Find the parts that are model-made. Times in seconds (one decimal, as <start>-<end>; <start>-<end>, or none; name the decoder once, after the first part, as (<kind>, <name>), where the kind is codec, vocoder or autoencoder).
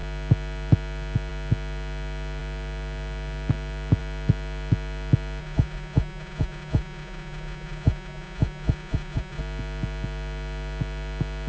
5.4-9.4 (vocoder, Vocos)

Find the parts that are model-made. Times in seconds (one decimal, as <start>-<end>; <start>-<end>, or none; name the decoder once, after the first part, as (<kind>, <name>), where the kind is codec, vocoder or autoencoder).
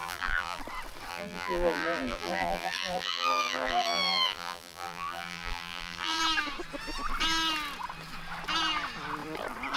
0.0-0.6 (vocoder, BigVGAN v2); 1.1-6.2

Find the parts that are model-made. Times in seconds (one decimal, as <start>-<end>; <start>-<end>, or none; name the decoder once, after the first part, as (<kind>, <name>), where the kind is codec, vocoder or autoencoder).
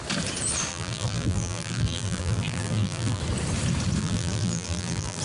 0.7-3.2 (vocoder, BigVGAN v2); 4.0-5.2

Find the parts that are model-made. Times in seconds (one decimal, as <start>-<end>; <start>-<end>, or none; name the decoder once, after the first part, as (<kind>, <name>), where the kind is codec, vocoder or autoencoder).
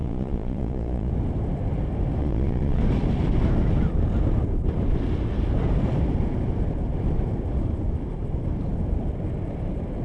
0.0-1.1 (vocoder, Vocos); 2.2-2.8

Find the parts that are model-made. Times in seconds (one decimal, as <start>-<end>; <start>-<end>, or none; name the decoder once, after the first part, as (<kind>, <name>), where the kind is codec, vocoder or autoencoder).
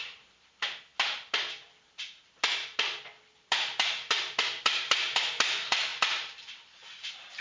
0.0-0.9 (vocoder, BigVGAN v2); 4.6-7.4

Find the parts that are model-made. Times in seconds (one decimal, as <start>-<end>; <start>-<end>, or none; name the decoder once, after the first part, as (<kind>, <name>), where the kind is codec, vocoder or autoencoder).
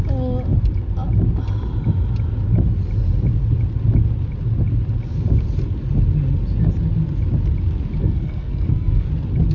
8.0-9.1 (codec, SNAC)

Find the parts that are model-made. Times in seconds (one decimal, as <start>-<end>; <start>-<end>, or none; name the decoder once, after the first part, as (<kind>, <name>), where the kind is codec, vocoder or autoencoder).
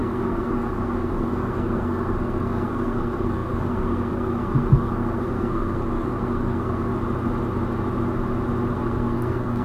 0.0-6.9 (codec, SNAC); 8.7-9.6